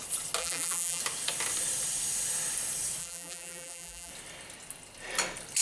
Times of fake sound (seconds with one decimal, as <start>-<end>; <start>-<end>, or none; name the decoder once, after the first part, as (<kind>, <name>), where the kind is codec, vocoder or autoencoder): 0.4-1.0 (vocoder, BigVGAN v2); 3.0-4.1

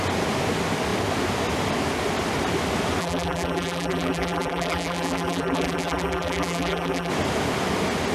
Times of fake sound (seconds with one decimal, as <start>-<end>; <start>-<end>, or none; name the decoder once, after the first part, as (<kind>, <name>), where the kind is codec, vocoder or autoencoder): 3.0-7.1 (vocoder, BigVGAN v2)

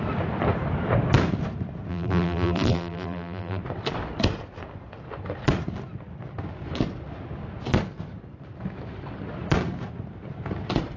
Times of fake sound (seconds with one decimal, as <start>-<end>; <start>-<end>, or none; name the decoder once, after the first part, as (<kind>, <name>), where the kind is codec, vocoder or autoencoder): 1.9-3.6 (vocoder, BigVGAN v2)

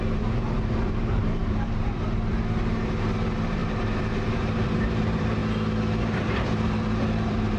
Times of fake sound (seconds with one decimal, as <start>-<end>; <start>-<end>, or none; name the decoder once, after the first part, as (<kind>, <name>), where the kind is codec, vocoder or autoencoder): 0.0-5.4 (vocoder, BigVGAN v2); 6.0-7.6

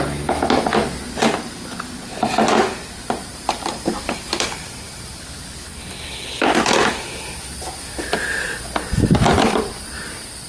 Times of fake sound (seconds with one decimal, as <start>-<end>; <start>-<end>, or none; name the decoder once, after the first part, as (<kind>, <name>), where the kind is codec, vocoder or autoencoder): 3.3-5.5 (vocoder, BigVGAN v2)

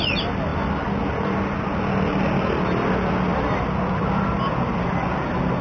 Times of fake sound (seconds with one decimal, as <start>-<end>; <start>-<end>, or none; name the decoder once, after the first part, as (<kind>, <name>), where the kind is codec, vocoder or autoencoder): none

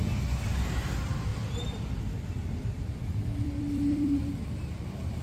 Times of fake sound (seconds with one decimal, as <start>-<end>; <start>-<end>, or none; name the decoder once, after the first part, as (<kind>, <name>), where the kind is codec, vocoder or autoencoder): 1.3-2.0 (vocoder, BigVGAN v2); 2.4-4.3

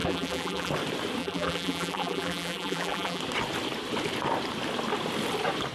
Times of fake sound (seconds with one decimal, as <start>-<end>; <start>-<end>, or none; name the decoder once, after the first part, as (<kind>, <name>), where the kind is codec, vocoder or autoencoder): 0.0-0.7 (vocoder, BigVGAN v2); 1.2-3.2